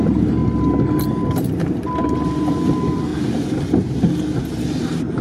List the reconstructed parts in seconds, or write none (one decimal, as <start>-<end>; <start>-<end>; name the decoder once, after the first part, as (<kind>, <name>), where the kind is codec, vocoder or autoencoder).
0.0-0.4 (vocoder, BigVGAN v2); 1.4-3.1; 4.5-5.2